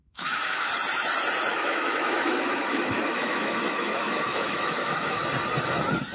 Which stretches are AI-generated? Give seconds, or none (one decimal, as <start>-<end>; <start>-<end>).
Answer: 0.0-0.7; 1.5-5.2